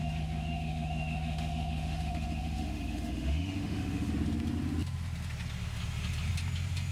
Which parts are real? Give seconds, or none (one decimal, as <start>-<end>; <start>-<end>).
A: 4.1-6.9